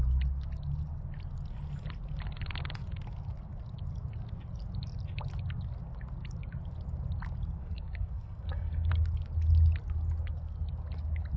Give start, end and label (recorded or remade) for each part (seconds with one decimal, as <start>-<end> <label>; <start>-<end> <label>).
0.0-7.6 recorded; 7.6-8.9 remade; 8.9-11.4 recorded